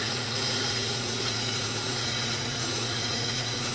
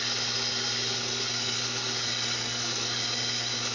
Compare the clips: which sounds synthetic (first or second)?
first